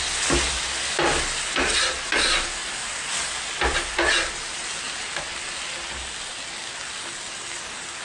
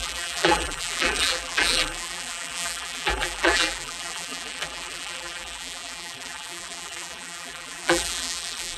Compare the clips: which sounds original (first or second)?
first